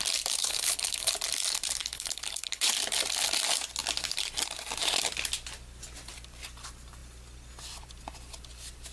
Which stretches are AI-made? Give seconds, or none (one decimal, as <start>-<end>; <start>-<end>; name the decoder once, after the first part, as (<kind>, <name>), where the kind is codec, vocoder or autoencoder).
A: 0.4-1.1 (codec, HILCodec); 1.8-2.7